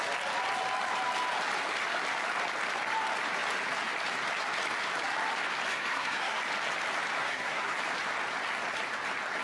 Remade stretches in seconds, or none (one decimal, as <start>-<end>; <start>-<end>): 5.7-6.4; 7.2-7.8